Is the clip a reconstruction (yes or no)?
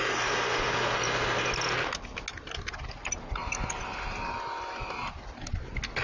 no